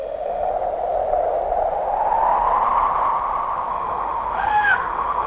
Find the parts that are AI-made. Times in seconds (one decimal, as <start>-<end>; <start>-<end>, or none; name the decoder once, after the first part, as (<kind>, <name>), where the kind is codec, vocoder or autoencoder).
0.0-0.5 (autoencoder, DAC-VAE); 3.7-5.3